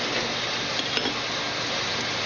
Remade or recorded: recorded